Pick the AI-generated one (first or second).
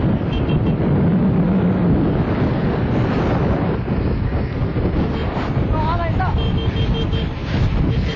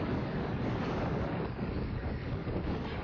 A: second